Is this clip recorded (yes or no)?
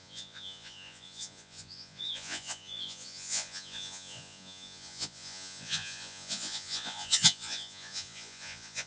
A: no